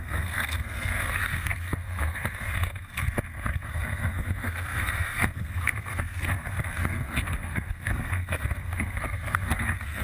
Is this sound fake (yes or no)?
yes